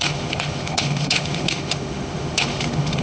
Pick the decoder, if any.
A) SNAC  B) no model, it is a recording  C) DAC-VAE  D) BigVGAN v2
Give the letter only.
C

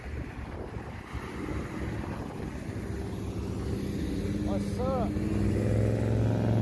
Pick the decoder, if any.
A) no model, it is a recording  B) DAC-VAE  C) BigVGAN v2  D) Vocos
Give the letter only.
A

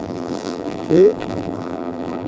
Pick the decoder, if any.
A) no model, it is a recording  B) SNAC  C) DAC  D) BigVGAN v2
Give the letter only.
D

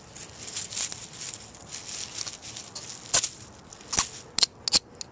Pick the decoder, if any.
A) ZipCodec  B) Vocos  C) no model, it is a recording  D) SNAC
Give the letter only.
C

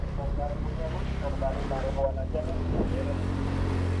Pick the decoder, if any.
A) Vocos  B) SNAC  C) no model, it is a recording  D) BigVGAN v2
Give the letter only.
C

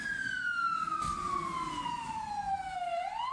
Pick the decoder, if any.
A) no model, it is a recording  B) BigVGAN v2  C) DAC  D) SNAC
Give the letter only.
A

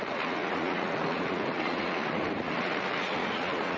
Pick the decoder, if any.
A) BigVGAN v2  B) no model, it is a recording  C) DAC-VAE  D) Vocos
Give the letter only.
D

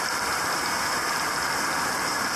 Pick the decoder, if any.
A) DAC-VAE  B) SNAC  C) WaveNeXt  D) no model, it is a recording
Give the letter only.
D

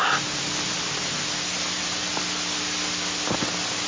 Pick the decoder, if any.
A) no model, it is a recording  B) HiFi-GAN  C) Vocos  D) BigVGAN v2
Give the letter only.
A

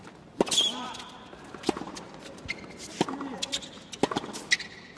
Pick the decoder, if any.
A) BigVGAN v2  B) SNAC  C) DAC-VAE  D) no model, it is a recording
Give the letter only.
D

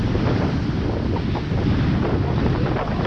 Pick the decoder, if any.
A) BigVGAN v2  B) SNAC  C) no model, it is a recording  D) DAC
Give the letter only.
C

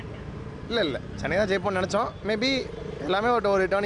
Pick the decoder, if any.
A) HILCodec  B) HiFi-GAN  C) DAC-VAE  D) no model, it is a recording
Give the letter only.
D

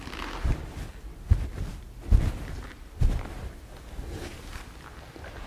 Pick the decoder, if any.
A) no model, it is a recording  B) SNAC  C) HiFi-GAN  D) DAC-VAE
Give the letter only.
A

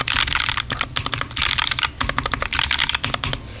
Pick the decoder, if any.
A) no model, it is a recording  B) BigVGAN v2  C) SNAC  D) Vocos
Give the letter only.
A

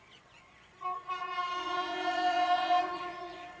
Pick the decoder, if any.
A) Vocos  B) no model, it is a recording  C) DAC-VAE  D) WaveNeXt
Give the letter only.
A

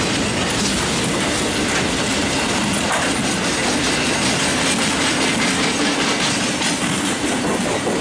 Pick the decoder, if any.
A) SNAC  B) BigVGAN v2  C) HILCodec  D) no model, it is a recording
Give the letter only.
D